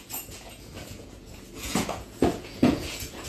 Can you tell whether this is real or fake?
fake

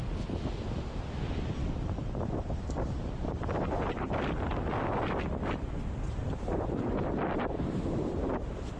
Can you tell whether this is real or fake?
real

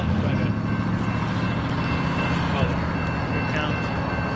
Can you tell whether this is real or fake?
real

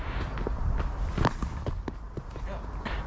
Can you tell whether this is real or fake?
real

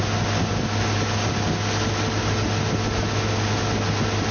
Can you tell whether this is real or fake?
real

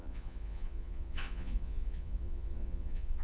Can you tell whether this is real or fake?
fake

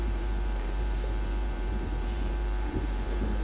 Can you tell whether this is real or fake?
fake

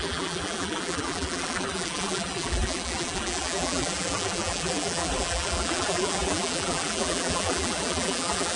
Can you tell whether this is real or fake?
fake